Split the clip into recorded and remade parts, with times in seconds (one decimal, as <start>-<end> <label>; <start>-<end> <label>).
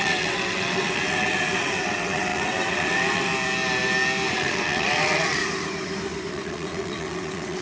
0.0-3.3 remade; 3.3-4.3 recorded; 4.3-5.4 remade; 5.4-6.3 recorded; 6.3-7.6 remade